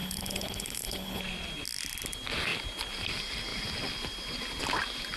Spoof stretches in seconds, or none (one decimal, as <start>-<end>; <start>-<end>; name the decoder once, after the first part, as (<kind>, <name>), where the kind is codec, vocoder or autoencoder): 0.0-1.2 (codec, HILCodec)